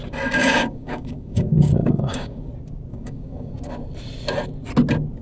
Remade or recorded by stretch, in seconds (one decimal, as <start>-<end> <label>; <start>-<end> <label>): 0.0-0.4 recorded; 0.4-2.5 remade; 2.5-2.9 recorded; 2.9-3.5 remade; 3.5-5.2 recorded